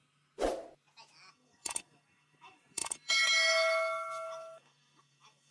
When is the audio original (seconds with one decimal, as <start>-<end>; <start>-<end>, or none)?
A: 0.0-1.3